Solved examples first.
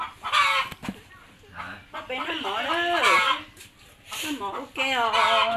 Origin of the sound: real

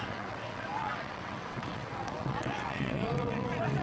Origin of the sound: fake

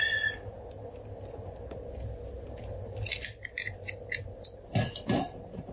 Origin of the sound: real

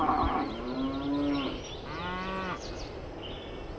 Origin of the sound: real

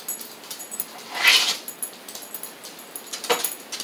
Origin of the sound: real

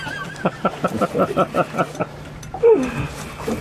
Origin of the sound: real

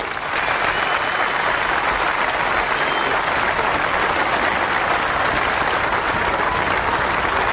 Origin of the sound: real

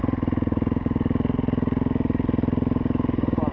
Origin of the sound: real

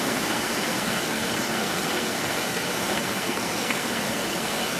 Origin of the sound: fake